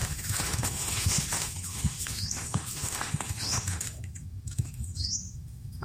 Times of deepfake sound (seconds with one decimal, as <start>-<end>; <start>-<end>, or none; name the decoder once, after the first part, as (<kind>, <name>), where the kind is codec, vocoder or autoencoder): 0.0-5.8 (autoencoder, DAC-VAE)

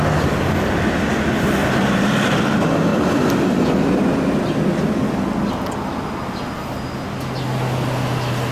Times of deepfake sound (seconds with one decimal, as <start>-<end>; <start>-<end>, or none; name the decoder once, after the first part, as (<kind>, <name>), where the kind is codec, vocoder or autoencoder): none

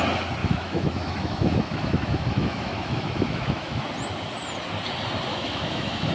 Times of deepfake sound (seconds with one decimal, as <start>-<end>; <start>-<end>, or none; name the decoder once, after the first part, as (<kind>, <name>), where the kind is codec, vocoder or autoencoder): 0.4-3.8 (autoencoder, DAC-VAE); 5.3-6.1

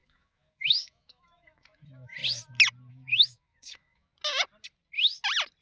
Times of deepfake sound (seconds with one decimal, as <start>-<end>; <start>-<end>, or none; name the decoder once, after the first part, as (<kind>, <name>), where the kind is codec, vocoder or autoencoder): 0.0-2.2 (autoencoder, DAC-VAE); 2.9-4.1

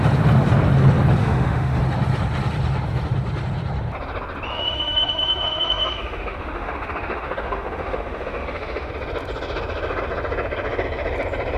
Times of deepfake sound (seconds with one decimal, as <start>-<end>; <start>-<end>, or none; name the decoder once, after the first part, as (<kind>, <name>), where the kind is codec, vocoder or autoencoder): 1.2-1.8 (autoencoder, DAC-VAE); 4.5-8.9

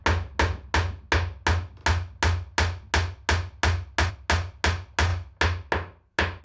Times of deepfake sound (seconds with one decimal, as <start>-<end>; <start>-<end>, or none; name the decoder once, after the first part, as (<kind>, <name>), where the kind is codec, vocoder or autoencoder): none

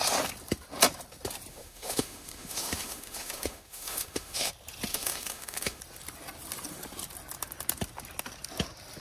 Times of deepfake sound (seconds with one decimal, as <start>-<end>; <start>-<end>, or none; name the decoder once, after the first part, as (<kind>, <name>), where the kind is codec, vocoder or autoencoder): 1.5-4.5 (autoencoder, DAC-VAE); 4.9-5.8

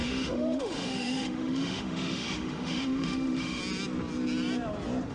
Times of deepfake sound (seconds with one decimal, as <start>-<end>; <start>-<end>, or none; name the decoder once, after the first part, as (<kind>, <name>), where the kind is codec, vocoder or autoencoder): 0.0-3.6 (autoencoder, DAC-VAE)